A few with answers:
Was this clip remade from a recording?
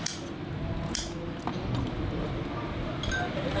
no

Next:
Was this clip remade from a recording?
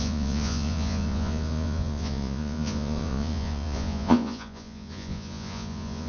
yes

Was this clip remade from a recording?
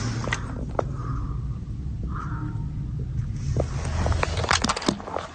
no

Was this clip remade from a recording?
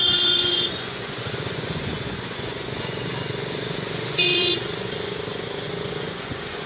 yes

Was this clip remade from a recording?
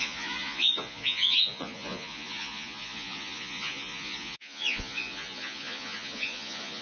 yes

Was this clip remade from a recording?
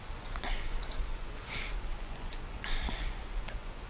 yes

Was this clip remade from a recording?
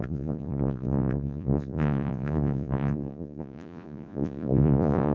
yes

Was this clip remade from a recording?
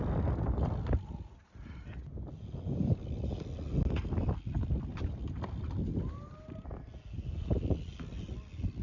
no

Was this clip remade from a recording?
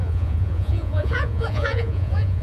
yes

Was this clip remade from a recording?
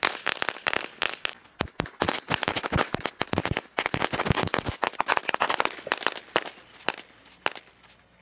no